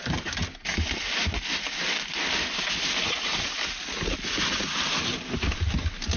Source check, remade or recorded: recorded